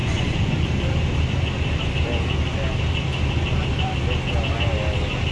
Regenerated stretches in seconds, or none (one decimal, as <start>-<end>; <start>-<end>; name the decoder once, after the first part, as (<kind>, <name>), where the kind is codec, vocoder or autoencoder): 0.0-0.6 (vocoder, Vocos)